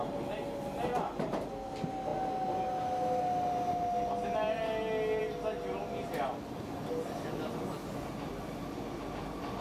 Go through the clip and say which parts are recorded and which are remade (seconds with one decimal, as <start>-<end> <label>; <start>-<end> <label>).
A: 0.0-9.6 recorded

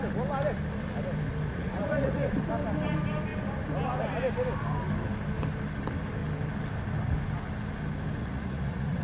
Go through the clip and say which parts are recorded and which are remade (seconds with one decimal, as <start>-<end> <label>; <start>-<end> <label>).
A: 0.0-1.5 recorded; 1.5-2.4 remade; 2.4-8.2 recorded; 8.2-9.0 remade